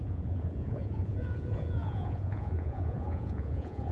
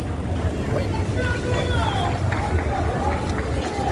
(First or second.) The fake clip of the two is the first